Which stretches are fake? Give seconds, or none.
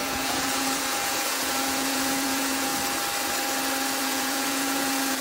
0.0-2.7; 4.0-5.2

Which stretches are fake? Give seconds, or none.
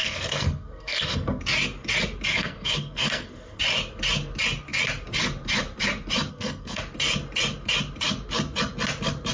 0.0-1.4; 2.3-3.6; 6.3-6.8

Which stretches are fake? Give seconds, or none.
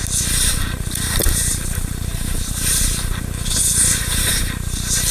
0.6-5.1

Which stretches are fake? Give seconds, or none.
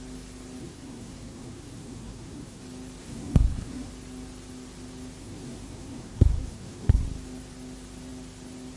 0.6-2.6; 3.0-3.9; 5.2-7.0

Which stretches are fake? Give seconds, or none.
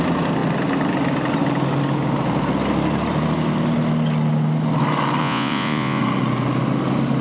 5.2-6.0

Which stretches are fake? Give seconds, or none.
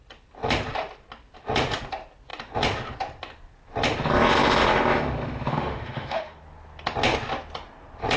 5.5-6.4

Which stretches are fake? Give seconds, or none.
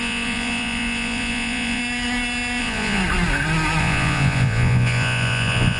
0.0-1.8; 2.6-3.0; 3.8-5.8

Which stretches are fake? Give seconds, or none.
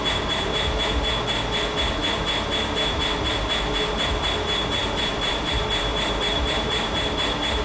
4.8-5.5; 5.9-7.0